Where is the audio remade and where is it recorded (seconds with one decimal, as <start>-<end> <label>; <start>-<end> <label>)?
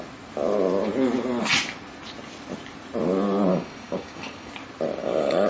0.0-3.5 recorded; 3.5-4.5 remade; 4.5-5.0 recorded; 5.0-5.5 remade